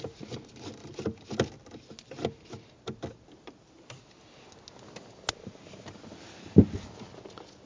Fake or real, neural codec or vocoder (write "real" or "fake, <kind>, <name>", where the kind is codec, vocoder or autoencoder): real